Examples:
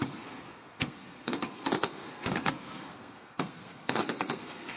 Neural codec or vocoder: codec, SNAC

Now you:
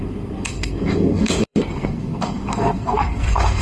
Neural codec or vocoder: codec, SNAC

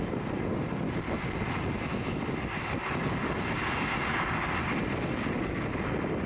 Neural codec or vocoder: none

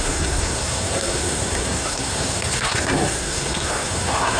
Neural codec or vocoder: codec, SNAC